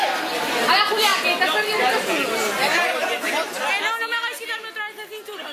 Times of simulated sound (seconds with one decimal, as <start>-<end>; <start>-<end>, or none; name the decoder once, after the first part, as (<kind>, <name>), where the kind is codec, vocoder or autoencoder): none